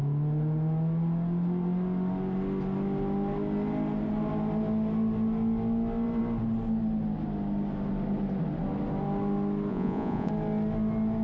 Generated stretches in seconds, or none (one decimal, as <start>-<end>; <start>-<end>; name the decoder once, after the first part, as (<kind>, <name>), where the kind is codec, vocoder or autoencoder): 9.7-10.3 (vocoder, Vocos)